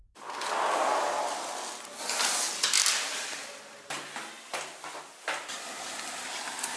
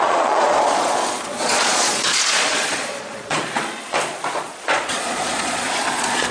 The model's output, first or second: second